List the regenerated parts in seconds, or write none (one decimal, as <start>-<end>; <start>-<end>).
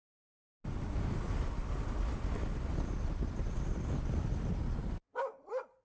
none